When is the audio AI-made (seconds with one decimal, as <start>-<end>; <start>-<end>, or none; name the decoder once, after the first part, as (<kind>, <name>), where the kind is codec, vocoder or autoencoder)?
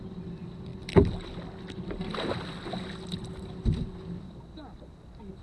none